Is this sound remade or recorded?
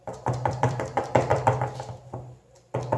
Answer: remade